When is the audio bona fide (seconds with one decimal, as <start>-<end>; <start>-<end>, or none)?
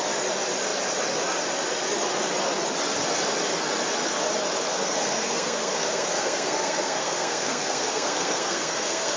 0.0-4.7